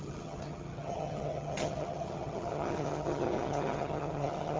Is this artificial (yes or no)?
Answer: yes